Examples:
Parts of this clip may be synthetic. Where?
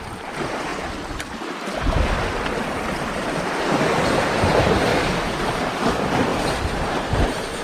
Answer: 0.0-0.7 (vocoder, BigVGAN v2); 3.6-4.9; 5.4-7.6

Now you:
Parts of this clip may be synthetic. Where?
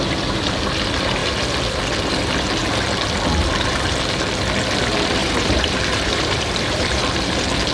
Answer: 5.2-7.0 (vocoder, BigVGAN v2)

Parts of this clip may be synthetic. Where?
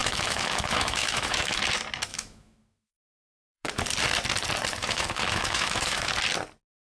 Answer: 0.0-1.6 (autoencoder, DAC-VAE); 2.1-3.7; 4.8-6.1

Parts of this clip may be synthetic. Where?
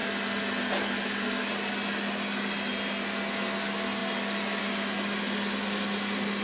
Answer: none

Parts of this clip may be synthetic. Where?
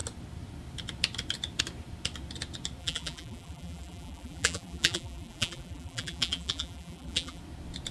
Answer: 2.8-7.4 (vocoder, BigVGAN v2)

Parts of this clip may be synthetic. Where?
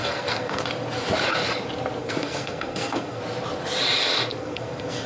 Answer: 0.0-0.6 (codec, SNAC); 2.0-3.2; 4.3-5.1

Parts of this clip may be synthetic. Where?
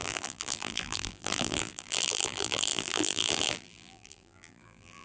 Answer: 0.0-5.0 (vocoder, BigVGAN v2)